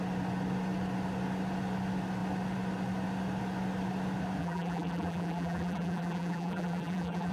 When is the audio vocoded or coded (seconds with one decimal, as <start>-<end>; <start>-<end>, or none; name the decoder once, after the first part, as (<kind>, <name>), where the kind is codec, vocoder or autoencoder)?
4.4-7.3 (vocoder, BigVGAN v2)

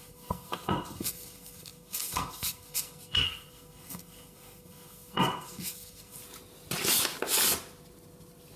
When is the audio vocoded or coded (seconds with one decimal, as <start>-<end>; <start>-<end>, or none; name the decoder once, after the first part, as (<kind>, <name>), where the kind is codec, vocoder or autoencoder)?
0.0-6.2 (codec, SNAC)

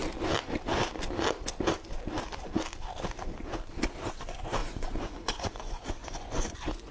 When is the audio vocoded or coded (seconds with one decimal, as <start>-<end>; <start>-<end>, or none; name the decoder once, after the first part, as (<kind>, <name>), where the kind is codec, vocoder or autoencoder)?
4.1-6.9 (vocoder, Vocos)

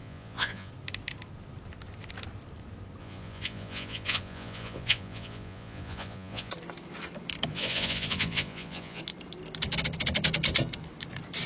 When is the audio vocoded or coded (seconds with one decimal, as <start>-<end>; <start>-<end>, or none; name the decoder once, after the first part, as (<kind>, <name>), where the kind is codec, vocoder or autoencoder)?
0.0-0.7 (vocoder, Vocos); 3.0-6.5; 7.5-9.0